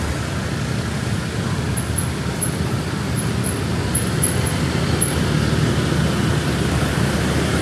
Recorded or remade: recorded